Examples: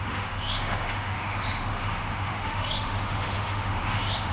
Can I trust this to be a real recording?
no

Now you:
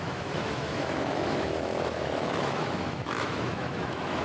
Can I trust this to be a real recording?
no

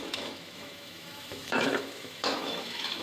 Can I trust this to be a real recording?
no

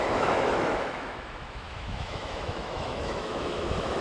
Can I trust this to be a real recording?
no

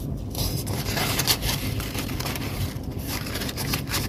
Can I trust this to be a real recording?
yes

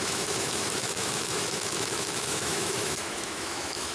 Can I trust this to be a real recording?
no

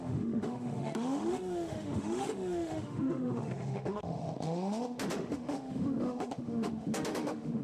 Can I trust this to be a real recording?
no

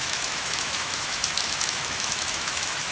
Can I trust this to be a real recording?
no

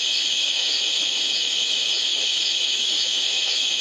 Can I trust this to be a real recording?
no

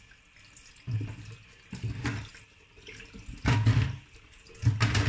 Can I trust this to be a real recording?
yes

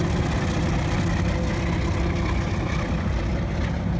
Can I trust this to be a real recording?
yes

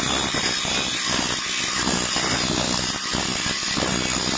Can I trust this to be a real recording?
yes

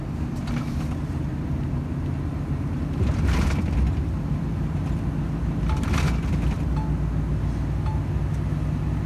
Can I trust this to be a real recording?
yes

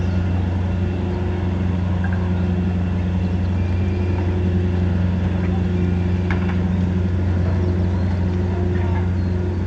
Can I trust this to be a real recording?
yes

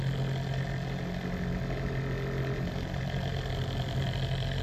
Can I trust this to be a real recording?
yes